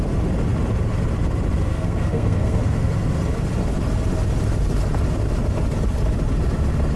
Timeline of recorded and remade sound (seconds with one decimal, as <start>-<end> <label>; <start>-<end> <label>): 0.0-1.7 recorded; 1.7-2.6 remade; 2.6-7.0 recorded